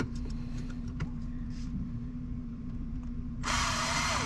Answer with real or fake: fake